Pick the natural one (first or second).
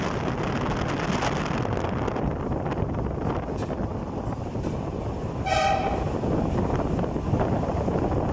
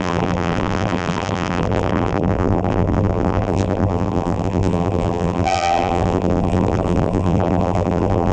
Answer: first